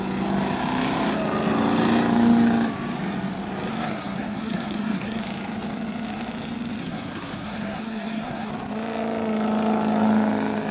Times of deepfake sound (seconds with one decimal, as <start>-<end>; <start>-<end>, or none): 3.7-5.2; 6.8-8.5